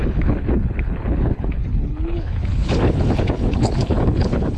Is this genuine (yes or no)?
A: no